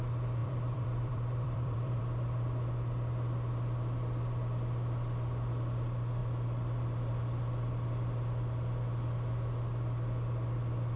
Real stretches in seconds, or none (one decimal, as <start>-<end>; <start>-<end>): 0.0-0.4; 2.0-11.0